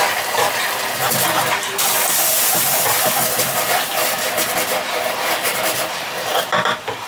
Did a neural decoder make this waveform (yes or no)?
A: yes